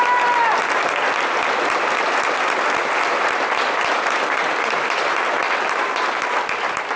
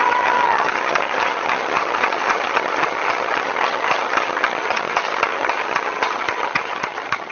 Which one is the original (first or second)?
first